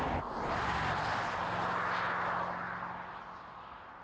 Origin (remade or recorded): recorded